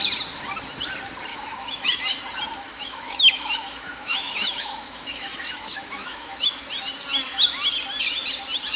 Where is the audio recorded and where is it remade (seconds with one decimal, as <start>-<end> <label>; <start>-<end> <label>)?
0.0-1.3 recorded; 1.3-2.0 remade; 2.0-2.7 recorded; 2.7-6.7 remade; 6.7-8.8 recorded